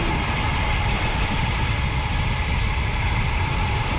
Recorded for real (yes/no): yes